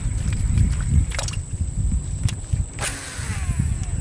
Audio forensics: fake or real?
real